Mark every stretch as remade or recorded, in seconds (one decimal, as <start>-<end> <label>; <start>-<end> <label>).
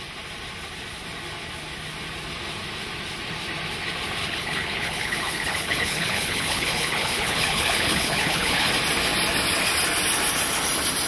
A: 0.0-4.2 recorded; 4.2-8.7 remade; 8.7-11.1 recorded